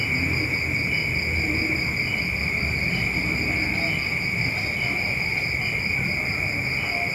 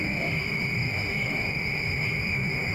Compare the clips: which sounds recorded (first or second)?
first